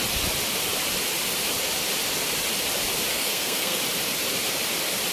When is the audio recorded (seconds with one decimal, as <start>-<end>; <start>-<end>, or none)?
0.0-3.1; 3.8-5.1